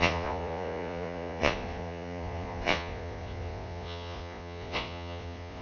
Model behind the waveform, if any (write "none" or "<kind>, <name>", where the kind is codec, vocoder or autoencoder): vocoder, Vocos